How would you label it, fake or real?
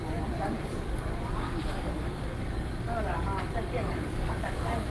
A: fake